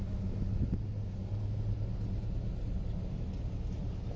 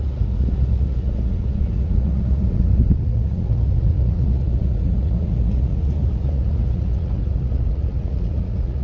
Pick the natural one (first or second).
first